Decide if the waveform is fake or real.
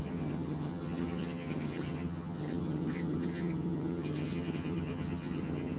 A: fake